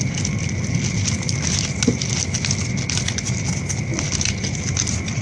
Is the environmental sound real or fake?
real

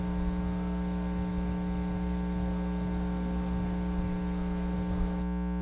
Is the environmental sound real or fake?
real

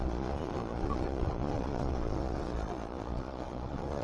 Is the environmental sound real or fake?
fake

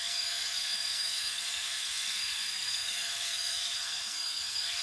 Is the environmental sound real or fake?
fake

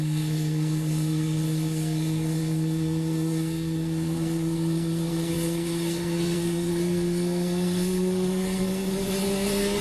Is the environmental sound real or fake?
fake